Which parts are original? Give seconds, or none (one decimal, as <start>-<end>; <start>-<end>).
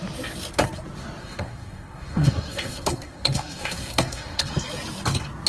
0.0-1.2; 4.5-5.5